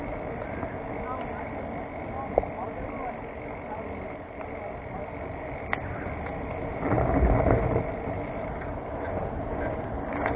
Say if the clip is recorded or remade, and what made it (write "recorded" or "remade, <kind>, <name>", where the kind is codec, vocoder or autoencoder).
recorded